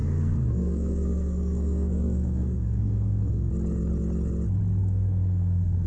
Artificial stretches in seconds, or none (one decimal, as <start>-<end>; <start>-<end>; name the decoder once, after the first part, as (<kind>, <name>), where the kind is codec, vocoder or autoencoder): 0.0-3.5 (codec, SNAC); 4.8-5.9